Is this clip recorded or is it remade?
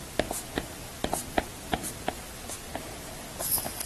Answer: recorded